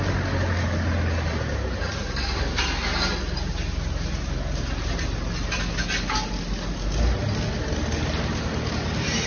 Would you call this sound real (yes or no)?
yes